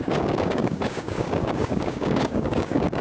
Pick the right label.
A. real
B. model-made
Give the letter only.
B